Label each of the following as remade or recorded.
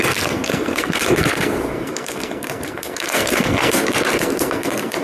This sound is remade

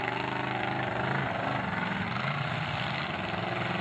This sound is recorded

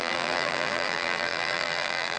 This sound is remade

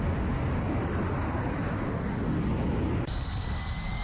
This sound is recorded